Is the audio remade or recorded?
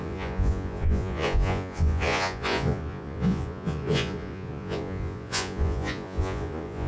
remade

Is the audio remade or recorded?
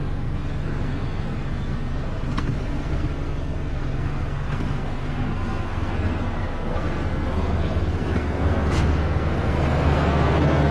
remade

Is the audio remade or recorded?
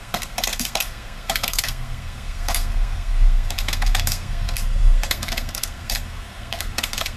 remade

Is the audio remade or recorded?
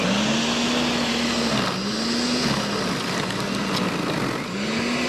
recorded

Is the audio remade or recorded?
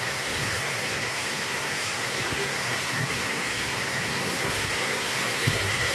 remade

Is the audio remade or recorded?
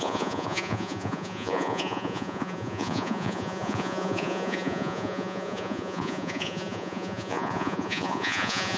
remade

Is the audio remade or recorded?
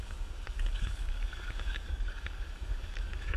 remade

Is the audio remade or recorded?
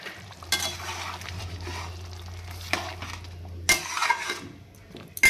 recorded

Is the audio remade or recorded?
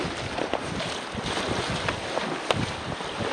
recorded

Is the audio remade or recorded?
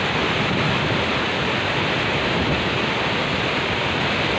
recorded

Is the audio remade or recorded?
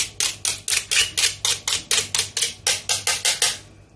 recorded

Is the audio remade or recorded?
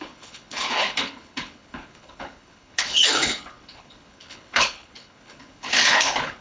remade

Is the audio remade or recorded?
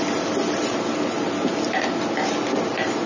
recorded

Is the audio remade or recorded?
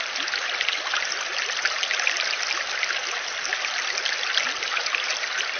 recorded